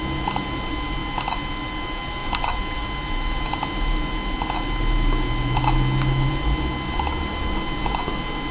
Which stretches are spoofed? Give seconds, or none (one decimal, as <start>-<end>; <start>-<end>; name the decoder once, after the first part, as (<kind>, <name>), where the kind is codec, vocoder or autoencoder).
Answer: none